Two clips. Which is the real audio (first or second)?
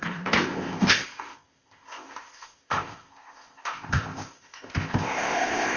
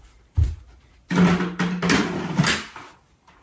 second